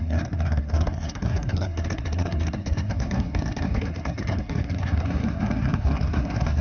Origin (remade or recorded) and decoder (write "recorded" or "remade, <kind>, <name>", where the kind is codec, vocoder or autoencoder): remade, codec, SNAC